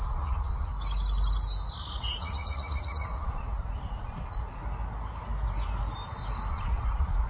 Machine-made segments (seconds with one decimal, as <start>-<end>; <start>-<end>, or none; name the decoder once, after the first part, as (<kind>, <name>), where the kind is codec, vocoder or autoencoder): 0.0-0.7 (vocoder, Vocos); 1.9-4.6; 6.5-7.3